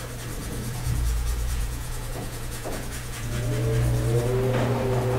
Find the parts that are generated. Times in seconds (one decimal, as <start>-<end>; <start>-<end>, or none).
0.4-3.5